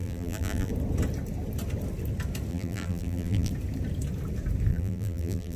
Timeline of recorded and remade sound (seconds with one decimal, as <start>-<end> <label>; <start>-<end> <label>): 0.0-0.7 remade; 0.7-2.5 recorded; 2.5-3.5 remade; 3.5-4.7 recorded; 4.7-5.6 remade